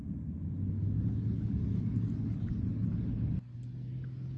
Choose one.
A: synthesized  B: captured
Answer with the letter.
B